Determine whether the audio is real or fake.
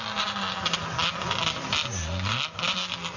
real